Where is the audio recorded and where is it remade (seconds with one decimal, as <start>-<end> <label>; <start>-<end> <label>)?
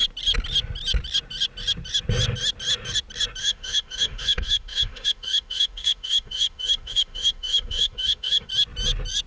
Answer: 0.0-3.4 recorded; 3.4-8.5 remade; 8.5-9.3 recorded